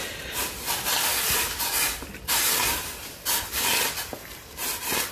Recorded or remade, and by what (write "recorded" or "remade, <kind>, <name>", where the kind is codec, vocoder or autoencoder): recorded